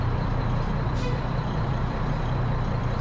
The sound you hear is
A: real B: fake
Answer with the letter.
B